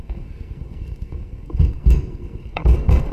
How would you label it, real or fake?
fake